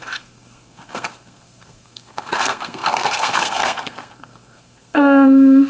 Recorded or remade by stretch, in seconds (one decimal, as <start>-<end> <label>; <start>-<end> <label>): 0.0-5.7 remade